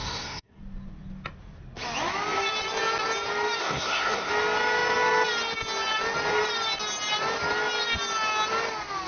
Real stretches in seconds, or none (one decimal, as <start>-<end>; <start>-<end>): 0.6-3.6; 4.3-9.1